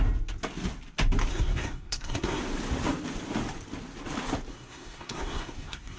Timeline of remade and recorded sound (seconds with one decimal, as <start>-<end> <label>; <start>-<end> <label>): 0.0-1.3 recorded; 1.3-2.4 remade; 2.4-4.5 recorded; 4.5-6.0 remade